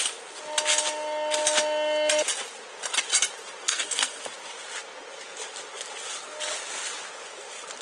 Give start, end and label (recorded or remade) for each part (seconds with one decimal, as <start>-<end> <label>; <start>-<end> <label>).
0.0-3.6 recorded; 3.6-4.2 remade; 4.2-7.8 recorded